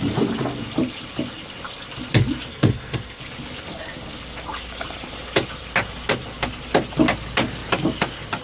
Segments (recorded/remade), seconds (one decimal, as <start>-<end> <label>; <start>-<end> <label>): 0.0-2.5 recorded; 2.5-3.2 remade; 3.2-8.4 recorded